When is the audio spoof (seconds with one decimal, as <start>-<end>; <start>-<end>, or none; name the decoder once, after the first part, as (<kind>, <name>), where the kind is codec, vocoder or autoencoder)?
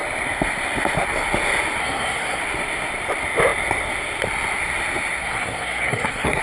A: 1.8-2.4 (codec, SNAC); 5.2-6.4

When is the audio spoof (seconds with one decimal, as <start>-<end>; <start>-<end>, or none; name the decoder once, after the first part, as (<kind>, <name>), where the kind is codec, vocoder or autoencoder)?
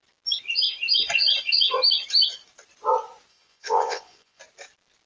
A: 3.3-4.4 (vocoder, Vocos)